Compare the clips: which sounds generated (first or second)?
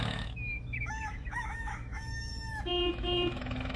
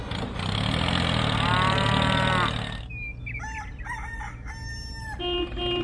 first